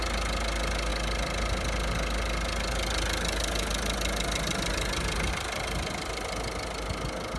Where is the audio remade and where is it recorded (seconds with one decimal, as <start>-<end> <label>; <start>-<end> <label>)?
0.0-7.4 recorded